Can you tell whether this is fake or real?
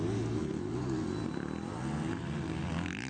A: real